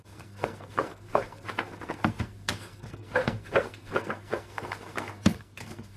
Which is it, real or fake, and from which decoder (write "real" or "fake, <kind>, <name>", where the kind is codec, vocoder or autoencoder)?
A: fake, codec, SNAC